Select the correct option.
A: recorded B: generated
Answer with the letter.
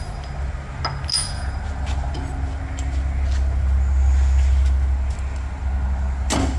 A